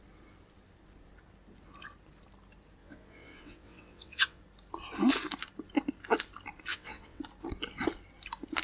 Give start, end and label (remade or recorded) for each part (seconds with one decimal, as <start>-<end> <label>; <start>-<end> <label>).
0.0-2.8 recorded; 2.8-4.4 remade; 4.4-6.7 recorded; 6.7-7.2 remade; 7.2-8.6 recorded